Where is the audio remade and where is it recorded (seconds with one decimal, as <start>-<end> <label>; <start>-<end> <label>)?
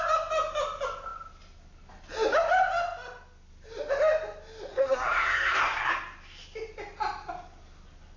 0.0-4.7 recorded; 4.7-5.9 remade; 5.9-8.2 recorded